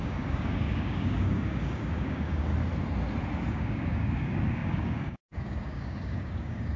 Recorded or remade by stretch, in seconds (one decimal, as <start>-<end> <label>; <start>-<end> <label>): 0.0-2.5 remade; 2.5-3.5 recorded; 3.5-6.8 remade